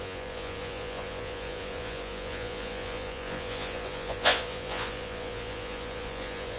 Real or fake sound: fake